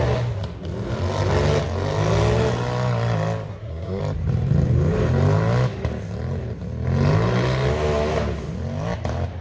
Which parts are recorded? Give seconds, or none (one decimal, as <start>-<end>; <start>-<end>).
0.0-3.5; 4.0-9.4

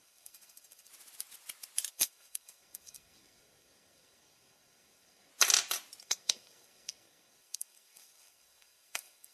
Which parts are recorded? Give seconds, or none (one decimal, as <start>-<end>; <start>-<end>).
0.9-1.9; 5.3-6.0